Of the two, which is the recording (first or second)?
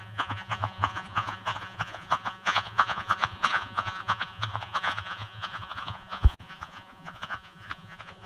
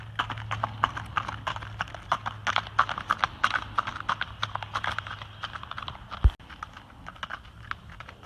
second